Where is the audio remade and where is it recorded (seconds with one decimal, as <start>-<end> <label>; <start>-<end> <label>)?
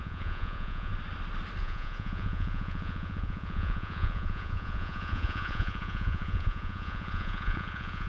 0.0-0.9 remade; 0.9-1.6 recorded; 1.6-8.1 remade